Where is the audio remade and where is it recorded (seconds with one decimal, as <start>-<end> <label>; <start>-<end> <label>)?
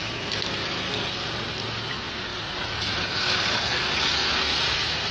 0.0-5.1 recorded